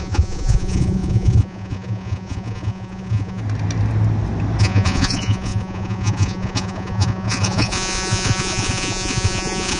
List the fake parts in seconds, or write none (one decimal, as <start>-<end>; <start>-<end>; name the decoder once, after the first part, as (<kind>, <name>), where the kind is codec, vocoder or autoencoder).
0.0-3.4 (vocoder, Vocos); 4.6-9.8